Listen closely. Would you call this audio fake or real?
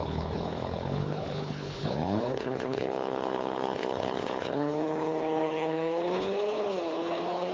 fake